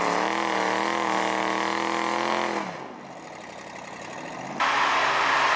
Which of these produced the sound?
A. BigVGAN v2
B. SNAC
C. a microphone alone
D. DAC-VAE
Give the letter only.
C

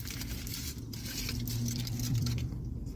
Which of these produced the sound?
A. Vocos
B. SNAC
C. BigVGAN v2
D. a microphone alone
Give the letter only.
C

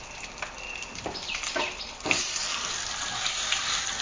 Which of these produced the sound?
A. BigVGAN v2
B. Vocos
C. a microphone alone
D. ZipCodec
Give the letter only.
A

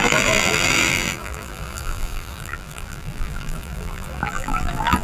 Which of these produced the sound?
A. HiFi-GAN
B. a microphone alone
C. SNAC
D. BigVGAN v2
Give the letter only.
D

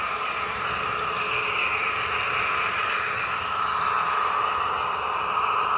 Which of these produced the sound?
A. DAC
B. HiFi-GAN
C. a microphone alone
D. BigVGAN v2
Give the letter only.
C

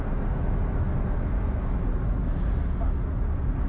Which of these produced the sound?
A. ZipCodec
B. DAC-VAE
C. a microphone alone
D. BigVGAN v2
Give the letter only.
C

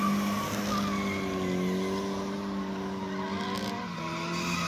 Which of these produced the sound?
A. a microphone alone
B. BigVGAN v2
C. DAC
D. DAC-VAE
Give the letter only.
A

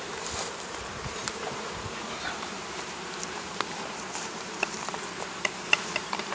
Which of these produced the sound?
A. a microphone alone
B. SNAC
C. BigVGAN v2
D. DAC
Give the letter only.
C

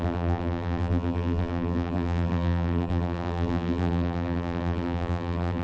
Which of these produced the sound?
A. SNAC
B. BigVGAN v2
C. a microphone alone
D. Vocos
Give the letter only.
B